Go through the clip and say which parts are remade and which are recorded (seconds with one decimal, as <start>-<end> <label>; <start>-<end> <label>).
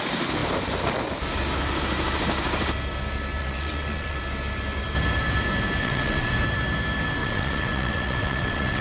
0.0-3.4 recorded; 3.4-4.2 remade; 4.2-5.8 recorded; 5.8-6.3 remade; 6.3-7.2 recorded; 7.2-8.8 remade